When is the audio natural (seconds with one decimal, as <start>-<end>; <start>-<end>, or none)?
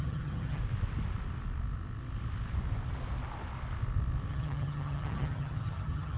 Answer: 0.6-4.3